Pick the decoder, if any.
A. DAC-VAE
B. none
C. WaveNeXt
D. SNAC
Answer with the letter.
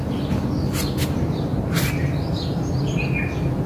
B